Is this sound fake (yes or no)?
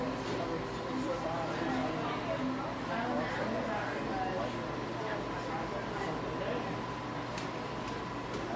no